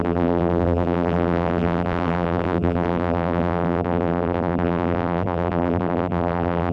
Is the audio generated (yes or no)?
yes